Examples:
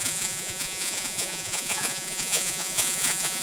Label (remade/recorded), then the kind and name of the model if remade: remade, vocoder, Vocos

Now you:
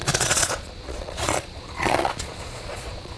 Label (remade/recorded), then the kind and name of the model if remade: remade, vocoder, Vocos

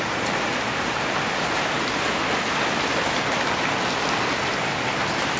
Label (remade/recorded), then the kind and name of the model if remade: recorded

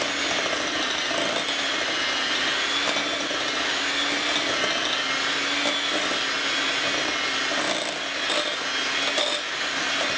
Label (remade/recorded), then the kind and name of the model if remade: recorded